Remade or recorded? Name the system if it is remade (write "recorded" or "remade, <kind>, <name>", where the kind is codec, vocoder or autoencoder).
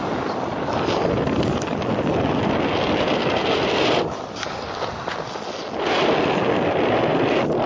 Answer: recorded